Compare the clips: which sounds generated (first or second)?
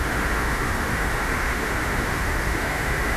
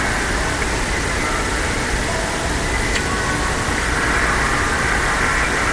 first